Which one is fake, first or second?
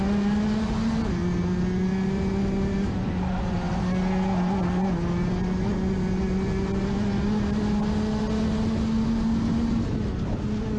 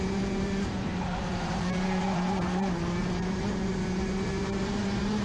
second